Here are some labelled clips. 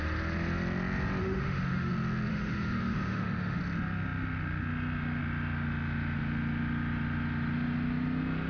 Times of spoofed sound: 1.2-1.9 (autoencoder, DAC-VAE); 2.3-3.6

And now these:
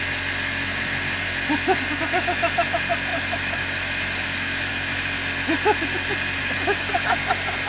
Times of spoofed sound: 3.1-4.7 (autoencoder, DAC-VAE); 6.4-6.9

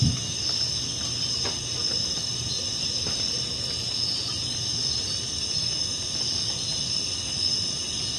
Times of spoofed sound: none

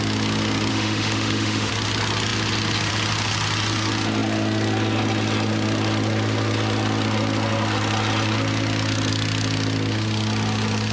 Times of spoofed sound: 0.7-1.7 (autoencoder, DAC-VAE)